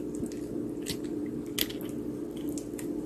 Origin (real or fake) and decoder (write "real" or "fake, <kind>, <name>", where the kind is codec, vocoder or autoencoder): real